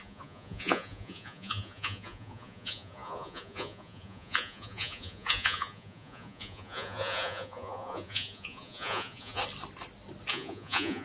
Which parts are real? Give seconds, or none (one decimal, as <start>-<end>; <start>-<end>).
9.4-10.3